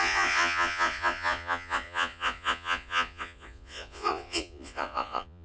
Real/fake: fake